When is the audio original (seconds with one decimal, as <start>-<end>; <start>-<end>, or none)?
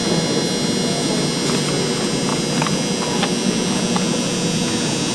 0.0-5.1